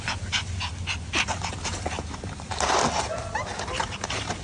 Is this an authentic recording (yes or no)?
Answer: yes